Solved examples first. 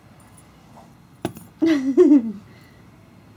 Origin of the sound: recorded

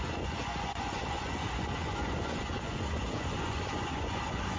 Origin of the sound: remade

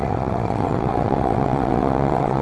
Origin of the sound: remade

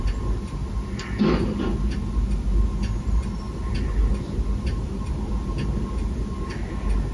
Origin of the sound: recorded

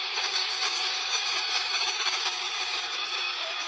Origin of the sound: remade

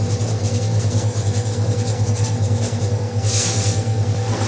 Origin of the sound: remade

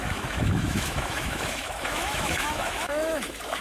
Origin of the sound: remade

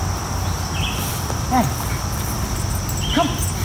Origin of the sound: recorded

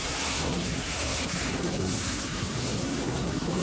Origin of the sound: remade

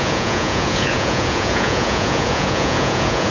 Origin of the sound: remade